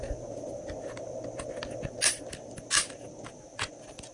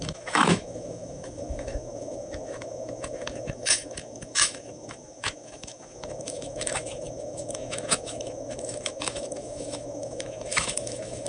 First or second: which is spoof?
second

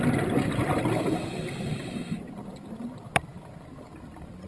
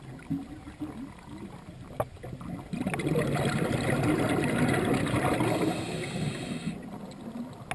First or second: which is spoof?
first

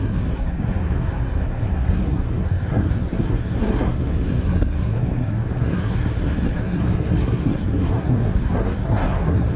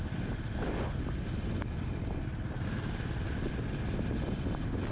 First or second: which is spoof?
first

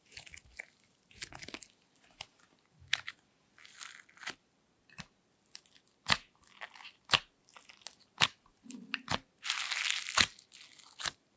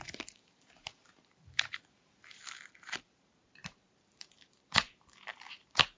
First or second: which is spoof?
second